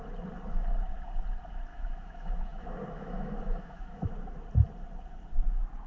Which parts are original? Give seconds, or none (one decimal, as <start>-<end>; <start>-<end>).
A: 0.0-1.7; 4.1-5.9